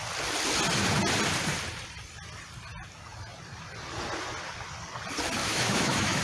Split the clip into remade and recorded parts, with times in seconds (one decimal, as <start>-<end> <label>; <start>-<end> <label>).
0.0-5.4 recorded; 5.4-6.2 remade